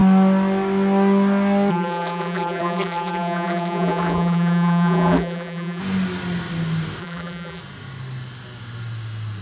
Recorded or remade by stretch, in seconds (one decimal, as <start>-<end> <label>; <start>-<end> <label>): 0.0-1.7 recorded; 1.7-5.8 remade; 5.8-7.0 recorded; 7.0-7.6 remade; 7.6-9.4 recorded